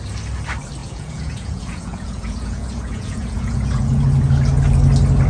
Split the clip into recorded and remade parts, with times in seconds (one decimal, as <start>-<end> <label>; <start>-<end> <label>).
0.0-0.8 recorded; 0.8-4.0 remade; 4.0-5.3 recorded